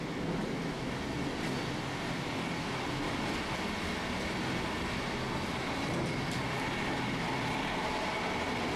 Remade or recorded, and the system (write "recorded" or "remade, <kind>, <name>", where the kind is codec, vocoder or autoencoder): recorded